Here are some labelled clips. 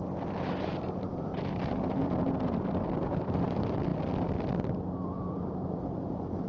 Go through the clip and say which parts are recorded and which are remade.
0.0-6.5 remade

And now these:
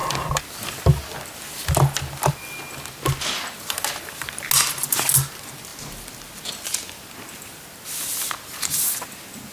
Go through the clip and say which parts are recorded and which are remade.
0.0-9.5 recorded

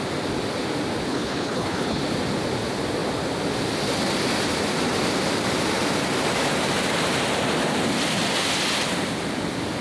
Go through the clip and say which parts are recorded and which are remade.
0.0-1.1 recorded; 1.1-2.0 remade; 2.0-9.8 recorded

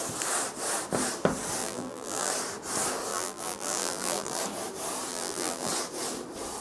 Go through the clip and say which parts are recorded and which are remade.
0.0-1.6 recorded; 1.6-2.3 remade; 2.3-3.1 recorded; 3.1-4.4 remade; 4.4-5.1 recorded; 5.1-5.7 remade; 5.7-6.6 recorded

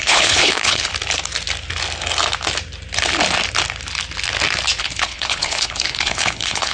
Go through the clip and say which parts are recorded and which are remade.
0.0-0.9 remade; 0.9-4.8 recorded; 4.8-6.7 remade

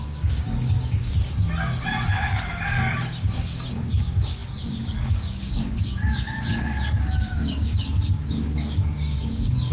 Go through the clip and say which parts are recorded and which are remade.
0.0-9.7 remade